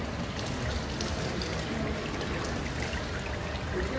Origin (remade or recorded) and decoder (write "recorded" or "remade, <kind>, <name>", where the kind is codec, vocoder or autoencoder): recorded